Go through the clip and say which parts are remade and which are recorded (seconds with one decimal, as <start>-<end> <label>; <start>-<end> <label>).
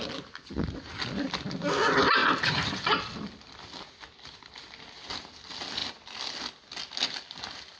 0.0-2.2 recorded; 2.2-3.4 remade; 3.4-5.8 recorded; 5.8-6.4 remade; 6.4-7.8 recorded